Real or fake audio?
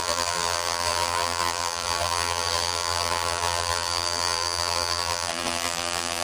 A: fake